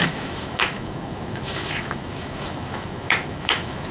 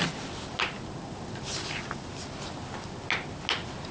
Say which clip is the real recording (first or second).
second